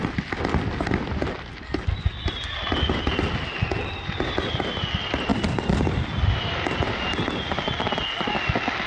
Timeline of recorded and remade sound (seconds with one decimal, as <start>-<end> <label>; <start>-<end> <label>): 0.0-8.9 recorded